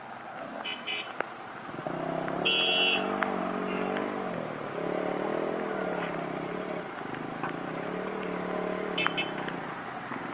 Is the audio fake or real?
real